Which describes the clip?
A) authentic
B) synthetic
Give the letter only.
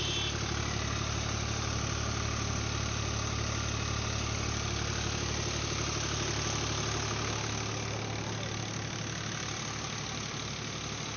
A